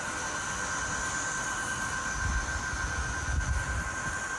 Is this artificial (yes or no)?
no